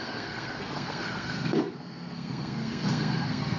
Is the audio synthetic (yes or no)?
yes